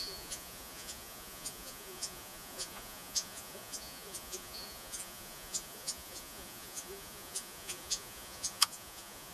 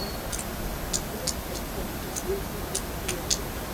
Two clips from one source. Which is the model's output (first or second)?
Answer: first